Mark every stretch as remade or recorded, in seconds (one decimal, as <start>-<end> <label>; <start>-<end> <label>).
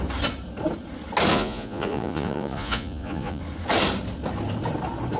0.0-1.3 recorded; 1.3-3.4 remade; 3.4-5.2 recorded